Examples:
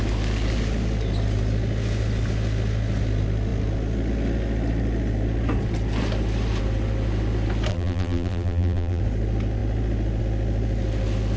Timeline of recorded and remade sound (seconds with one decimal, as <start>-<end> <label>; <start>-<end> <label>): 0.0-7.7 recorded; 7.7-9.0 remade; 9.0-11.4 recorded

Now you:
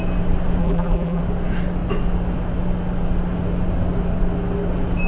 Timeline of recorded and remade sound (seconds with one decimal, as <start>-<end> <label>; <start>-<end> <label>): 0.0-0.6 recorded; 0.6-1.2 remade; 1.2-5.1 recorded

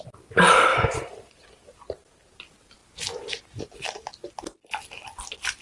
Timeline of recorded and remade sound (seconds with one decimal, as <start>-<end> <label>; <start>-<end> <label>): 0.0-0.7 recorded; 0.7-2.4 remade; 2.4-5.6 recorded

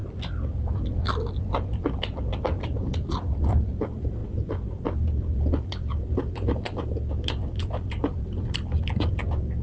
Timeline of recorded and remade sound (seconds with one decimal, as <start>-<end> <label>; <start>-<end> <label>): 0.0-9.6 recorded

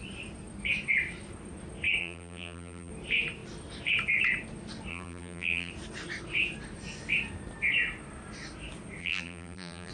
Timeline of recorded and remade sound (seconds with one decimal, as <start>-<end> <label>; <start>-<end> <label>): 0.0-2.0 recorded; 2.0-2.9 remade; 2.9-4.9 recorded; 4.9-5.7 remade; 5.7-9.0 recorded; 9.0-9.9 remade

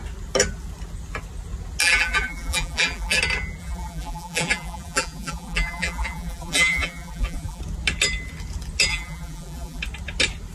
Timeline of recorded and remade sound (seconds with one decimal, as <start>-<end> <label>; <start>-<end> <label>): 0.0-1.8 recorded; 1.8-3.2 remade; 3.2-3.6 recorded; 3.6-7.6 remade; 7.6-8.9 recorded; 8.9-9.8 remade; 9.8-10.5 recorded